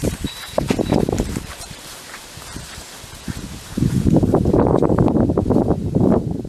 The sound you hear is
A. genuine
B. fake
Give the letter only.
B